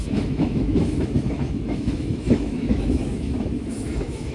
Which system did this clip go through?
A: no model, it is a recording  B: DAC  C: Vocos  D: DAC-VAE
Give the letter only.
D